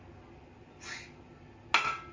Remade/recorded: recorded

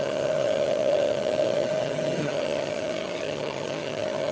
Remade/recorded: remade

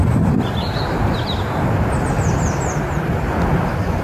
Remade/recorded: recorded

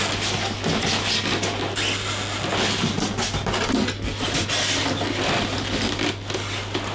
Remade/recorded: recorded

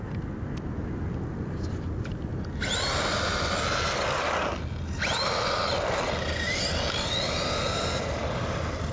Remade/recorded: recorded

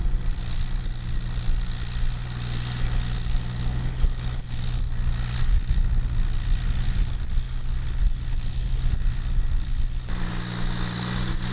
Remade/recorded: recorded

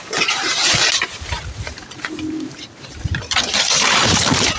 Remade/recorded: remade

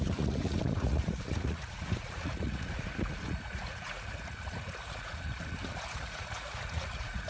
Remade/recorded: remade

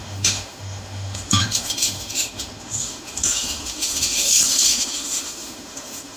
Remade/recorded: remade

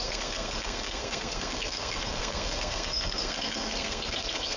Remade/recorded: remade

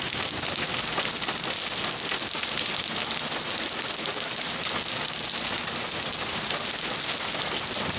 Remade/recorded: recorded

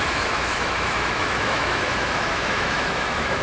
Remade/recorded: remade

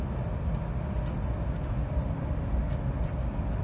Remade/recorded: recorded